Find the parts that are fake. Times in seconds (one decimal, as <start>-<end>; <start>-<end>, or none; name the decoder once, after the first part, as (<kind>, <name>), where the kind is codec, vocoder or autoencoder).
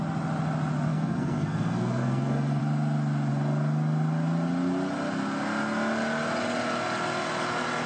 0.9-2.6 (codec, SNAC)